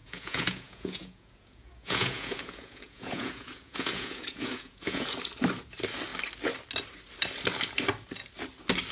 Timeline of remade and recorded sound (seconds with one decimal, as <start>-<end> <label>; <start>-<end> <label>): 0.0-5.1 remade; 5.1-8.9 recorded